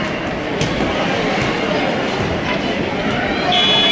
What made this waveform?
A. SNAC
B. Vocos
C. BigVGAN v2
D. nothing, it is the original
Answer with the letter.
D